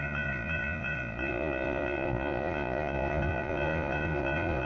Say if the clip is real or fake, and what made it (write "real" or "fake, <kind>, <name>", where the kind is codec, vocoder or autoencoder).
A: fake, vocoder, Vocos